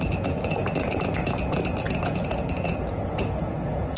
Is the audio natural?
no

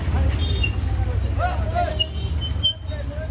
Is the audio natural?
yes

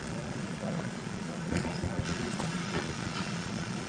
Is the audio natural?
no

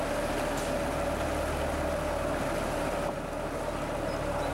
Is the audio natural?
yes